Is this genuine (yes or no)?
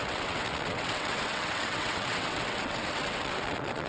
no